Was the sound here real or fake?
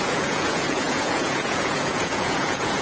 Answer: fake